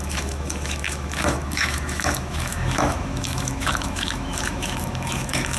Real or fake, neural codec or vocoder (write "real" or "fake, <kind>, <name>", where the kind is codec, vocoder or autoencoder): fake, autoencoder, DAC-VAE